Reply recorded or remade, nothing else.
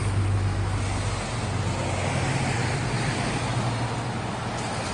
recorded